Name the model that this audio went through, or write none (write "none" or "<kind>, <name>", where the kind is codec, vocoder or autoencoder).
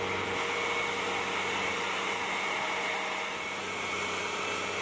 none